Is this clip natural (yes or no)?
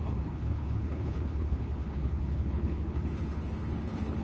no